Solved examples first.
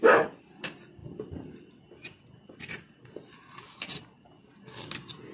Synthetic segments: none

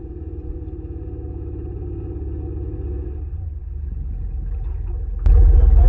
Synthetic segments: none

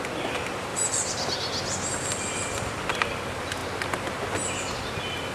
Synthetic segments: 0.7-3.0 (vocoder, BigVGAN v2)

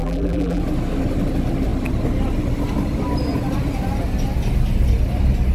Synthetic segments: 0.0-0.6 (vocoder, BigVGAN v2)

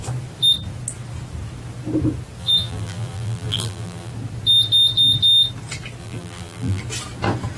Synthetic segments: 2.4-4.1 (vocoder, BigVGAN v2); 6.0-6.8

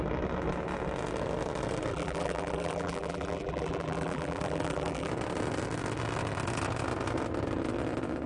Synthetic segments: 1.9-5.1 (vocoder, BigVGAN v2)

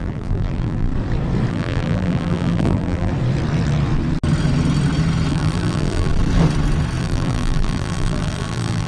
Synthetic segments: 0.0-0.9 (vocoder, BigVGAN v2); 1.5-3.1; 5.3-6.1; 7.0-8.9